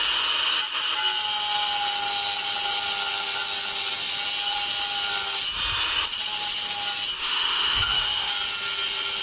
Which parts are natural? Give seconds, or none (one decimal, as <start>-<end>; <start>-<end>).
0.0-7.2; 8.3-9.2